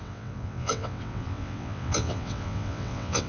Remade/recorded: remade